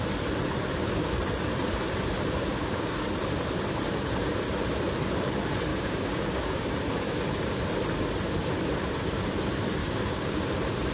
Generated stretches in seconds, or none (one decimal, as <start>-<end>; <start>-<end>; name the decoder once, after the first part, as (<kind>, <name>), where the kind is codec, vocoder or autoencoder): 2.5-3.1 (codec, DAC); 5.7-6.7; 9.8-10.5